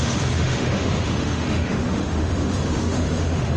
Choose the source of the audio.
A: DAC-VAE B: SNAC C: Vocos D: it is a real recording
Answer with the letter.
A